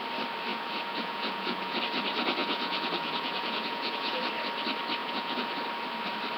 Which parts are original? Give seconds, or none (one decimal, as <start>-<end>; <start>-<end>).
0.0-0.5; 1.8-2.4; 4.2-5.0; 5.5-6.4